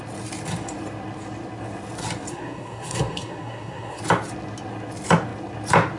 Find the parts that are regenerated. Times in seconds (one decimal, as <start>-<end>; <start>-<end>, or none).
2.3-4.0